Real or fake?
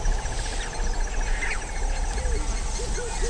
real